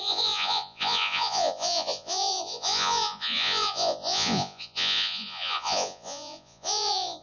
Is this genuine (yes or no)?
no